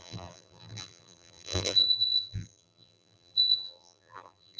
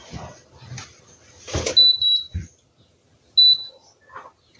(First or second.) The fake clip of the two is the first